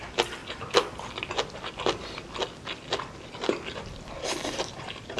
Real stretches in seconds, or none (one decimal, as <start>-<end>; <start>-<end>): 0.0-5.2